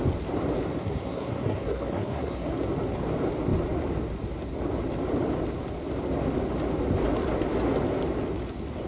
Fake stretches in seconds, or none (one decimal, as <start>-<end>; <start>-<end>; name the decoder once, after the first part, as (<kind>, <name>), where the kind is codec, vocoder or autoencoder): 0.8-2.5 (codec, SNAC)